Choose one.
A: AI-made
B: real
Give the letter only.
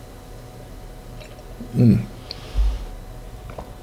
B